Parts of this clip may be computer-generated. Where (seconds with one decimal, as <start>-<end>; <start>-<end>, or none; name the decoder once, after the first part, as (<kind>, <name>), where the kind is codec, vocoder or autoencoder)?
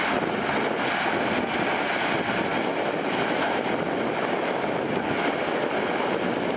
none